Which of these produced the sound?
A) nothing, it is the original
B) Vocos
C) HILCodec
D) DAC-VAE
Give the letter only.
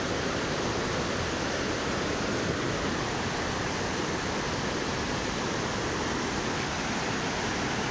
A